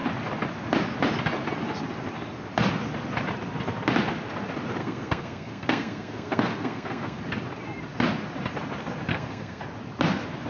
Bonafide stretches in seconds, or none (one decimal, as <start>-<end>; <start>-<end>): 0.0-4.8; 7.2-9.1; 9.6-10.5